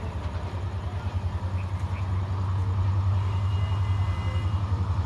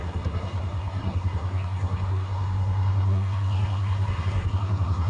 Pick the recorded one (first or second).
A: first